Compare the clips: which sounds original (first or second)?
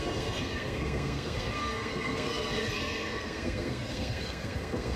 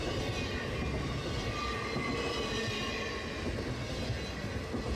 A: second